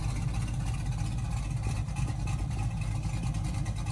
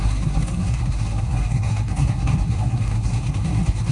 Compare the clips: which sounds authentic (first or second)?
first